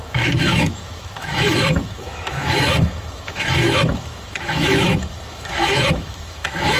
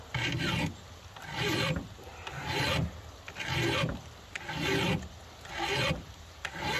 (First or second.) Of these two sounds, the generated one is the first